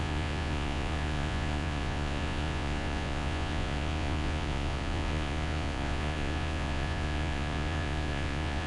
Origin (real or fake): fake